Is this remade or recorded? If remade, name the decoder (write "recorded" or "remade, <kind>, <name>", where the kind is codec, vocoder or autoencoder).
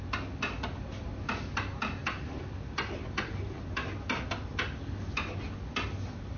recorded